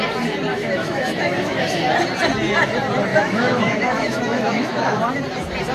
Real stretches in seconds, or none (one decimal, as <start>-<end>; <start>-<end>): 0.0-0.5; 1.8-3.1; 5.0-5.7